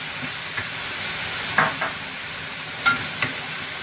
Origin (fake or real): real